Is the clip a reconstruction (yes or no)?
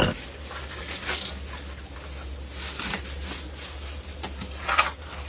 no